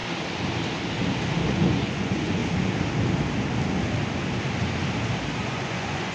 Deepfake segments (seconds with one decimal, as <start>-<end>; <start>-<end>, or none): 1.5-2.4; 5.4-6.1